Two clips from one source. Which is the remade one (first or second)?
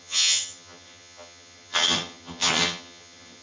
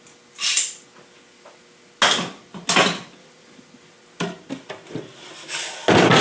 first